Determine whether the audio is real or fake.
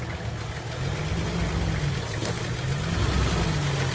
real